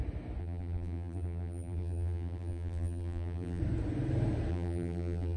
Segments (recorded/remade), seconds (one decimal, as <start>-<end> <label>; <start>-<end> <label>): 0.0-0.4 recorded; 0.4-3.6 remade; 3.6-4.5 recorded; 4.5-5.4 remade